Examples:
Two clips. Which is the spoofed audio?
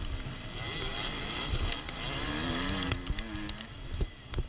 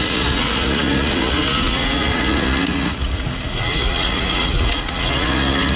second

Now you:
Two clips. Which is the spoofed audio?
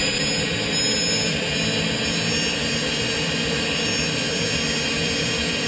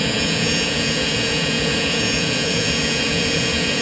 second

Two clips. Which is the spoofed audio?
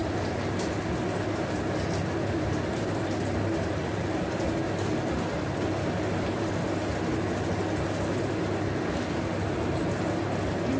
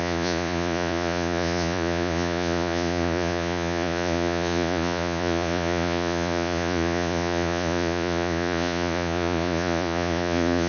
second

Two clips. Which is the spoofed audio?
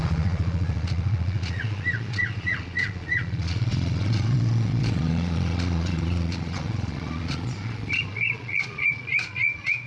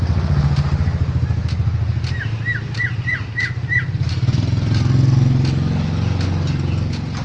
first